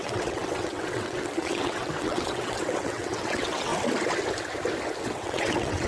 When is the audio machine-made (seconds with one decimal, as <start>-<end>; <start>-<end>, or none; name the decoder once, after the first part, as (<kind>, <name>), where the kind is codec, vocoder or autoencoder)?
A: 0.0-3.7 (vocoder, WaveNeXt); 5.0-5.9